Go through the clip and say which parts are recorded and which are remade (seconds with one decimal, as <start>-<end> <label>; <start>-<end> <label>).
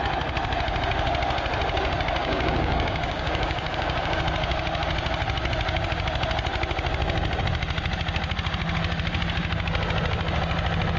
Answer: 0.0-2.2 recorded; 2.2-4.2 remade; 4.2-11.0 recorded